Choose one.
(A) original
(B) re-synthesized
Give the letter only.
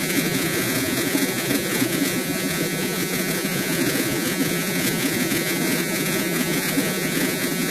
B